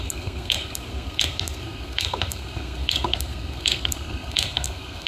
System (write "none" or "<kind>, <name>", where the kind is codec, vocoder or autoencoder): codec, SNAC